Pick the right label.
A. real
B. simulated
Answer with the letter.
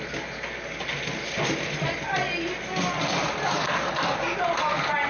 A